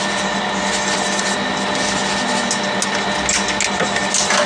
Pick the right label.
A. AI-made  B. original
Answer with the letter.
B